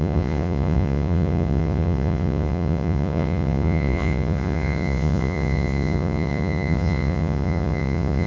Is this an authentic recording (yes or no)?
no